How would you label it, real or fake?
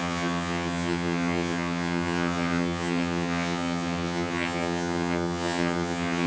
fake